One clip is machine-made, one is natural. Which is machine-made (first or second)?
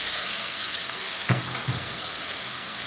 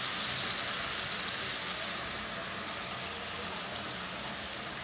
first